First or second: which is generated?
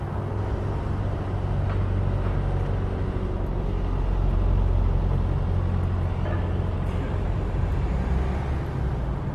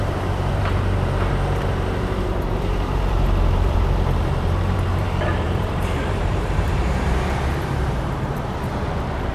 second